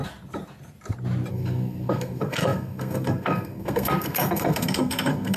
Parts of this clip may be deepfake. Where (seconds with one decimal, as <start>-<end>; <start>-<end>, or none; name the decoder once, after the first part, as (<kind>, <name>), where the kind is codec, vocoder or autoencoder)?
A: 1.3-5.4 (codec, SNAC)